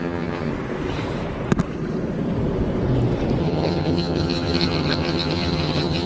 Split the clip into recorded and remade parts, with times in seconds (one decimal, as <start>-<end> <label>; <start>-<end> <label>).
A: 0.0-0.5 remade; 0.5-3.4 recorded; 3.4-6.1 remade